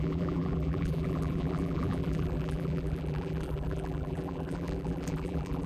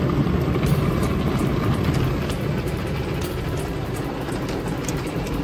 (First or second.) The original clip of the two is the second